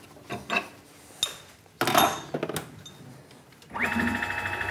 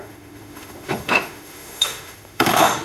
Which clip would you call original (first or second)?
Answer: first